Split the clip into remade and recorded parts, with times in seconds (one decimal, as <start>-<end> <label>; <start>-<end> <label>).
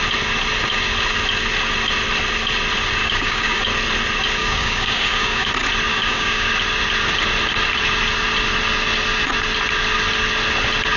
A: 0.0-3.0 recorded; 3.0-3.6 remade; 3.6-4.4 recorded; 4.4-5.5 remade; 5.5-5.9 recorded; 5.9-6.5 remade; 6.5-11.0 recorded